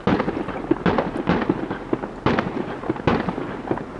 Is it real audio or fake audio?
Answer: real